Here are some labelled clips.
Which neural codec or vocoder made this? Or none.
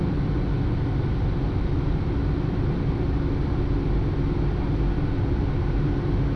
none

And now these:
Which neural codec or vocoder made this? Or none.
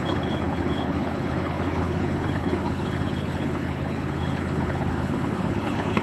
codec, HILCodec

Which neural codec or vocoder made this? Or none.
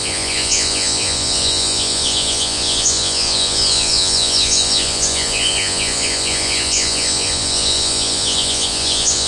vocoder, Vocos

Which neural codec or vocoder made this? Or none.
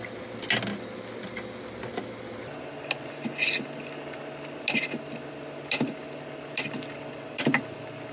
none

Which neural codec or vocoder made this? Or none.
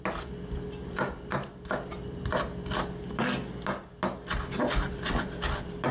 none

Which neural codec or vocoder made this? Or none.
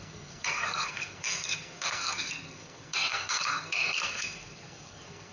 codec, SNAC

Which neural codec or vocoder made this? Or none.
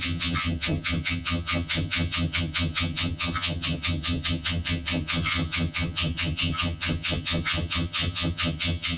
vocoder, HiFi-GAN